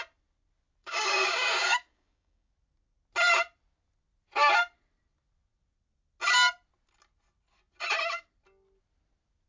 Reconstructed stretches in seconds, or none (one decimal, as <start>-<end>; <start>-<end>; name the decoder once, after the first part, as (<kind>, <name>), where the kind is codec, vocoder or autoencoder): 0.8-2.5 (codec, DAC)